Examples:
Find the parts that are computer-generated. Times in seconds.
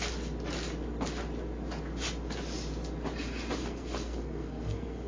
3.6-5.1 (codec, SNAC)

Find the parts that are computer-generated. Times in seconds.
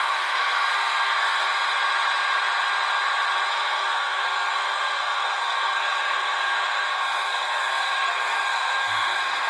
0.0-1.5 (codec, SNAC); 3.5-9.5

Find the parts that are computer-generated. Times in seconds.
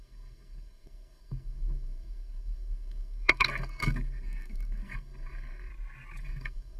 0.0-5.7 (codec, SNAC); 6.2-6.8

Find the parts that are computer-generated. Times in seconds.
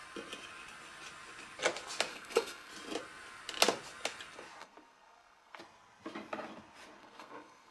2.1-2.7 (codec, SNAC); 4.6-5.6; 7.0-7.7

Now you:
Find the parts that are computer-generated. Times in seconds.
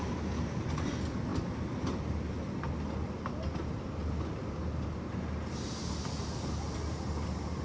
none